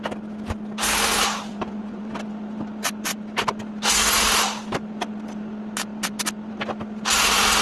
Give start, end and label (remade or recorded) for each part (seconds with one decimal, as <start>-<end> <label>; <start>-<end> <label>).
0.0-1.5 recorded; 1.5-2.1 remade; 2.1-7.6 recorded

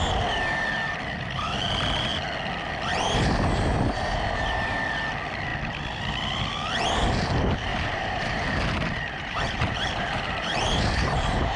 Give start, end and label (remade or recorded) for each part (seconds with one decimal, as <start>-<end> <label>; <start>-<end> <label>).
0.0-7.7 recorded; 7.7-11.6 remade

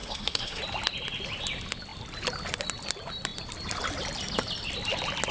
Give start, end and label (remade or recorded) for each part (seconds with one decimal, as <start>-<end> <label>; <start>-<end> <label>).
0.0-0.6 remade; 0.6-5.3 recorded

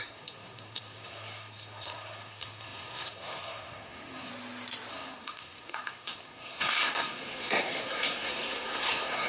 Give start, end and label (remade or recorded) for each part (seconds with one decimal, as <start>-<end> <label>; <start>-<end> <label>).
0.0-4.3 remade; 4.3-4.9 recorded; 4.9-9.3 remade

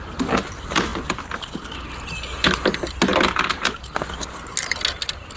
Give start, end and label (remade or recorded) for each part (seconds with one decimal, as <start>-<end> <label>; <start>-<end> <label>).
0.0-5.4 recorded

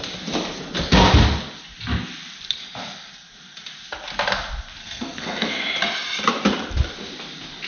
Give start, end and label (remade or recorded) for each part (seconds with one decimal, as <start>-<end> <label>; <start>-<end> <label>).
0.0-4.8 recorded; 4.8-5.6 remade; 5.6-7.7 recorded